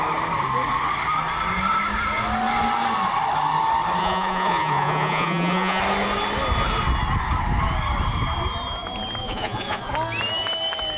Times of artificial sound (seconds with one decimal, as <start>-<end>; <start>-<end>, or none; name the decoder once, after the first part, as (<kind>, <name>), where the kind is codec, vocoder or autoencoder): 4.0-5.8 (vocoder, Vocos); 9.2-9.9